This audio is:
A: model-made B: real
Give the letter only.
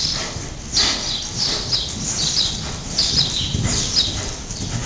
B